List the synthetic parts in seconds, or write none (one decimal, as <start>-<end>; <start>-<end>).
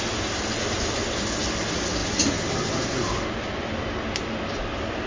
none